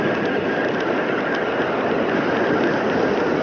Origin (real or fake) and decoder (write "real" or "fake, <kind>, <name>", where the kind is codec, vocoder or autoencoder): real